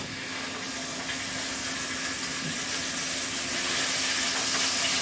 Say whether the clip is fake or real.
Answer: real